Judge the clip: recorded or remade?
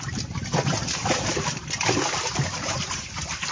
recorded